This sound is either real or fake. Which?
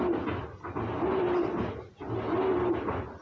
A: real